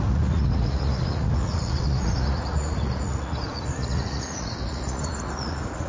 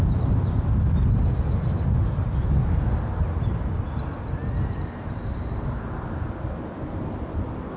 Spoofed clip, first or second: first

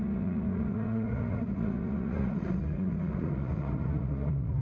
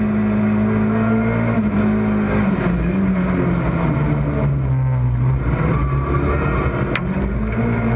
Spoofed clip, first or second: first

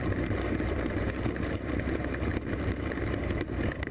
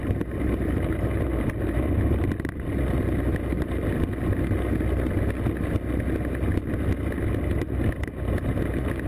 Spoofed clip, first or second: first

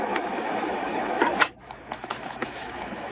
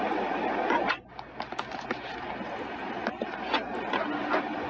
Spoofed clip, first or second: first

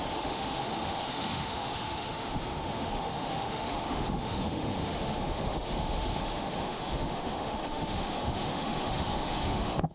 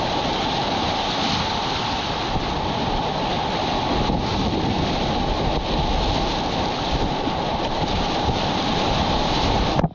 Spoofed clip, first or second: first